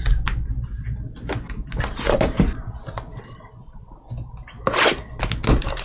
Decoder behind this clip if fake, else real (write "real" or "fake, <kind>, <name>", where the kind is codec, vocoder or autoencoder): real